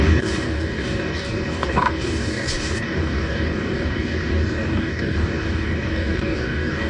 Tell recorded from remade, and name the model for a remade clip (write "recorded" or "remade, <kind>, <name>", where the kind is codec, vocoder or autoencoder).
remade, codec, DAC